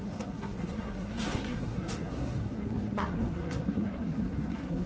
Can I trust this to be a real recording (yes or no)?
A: no